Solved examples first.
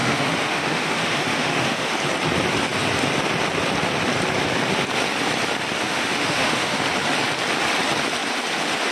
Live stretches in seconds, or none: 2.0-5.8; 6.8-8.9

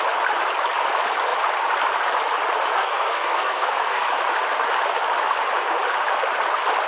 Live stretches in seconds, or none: 0.0-2.7; 4.1-6.9

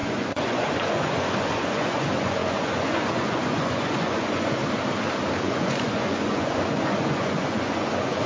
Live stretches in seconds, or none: 4.6-5.4